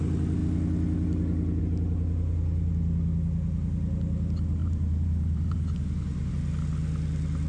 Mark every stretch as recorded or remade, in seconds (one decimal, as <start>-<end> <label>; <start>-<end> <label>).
0.0-4.6 recorded; 4.6-6.3 remade; 6.3-7.5 recorded